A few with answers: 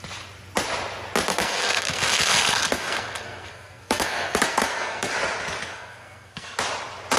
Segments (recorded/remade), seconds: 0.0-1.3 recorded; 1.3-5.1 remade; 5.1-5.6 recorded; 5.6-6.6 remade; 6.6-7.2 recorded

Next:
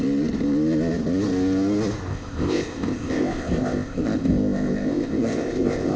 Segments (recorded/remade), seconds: 0.0-2.1 recorded; 2.1-6.0 remade